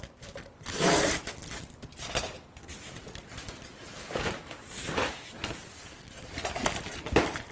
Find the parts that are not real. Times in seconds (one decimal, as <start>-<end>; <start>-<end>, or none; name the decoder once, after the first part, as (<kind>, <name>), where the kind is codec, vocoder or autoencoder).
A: none